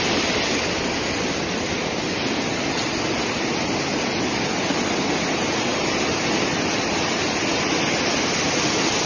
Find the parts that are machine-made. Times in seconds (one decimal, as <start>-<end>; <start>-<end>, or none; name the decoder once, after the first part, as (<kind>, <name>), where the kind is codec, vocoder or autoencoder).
none